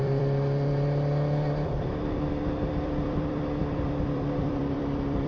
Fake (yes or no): yes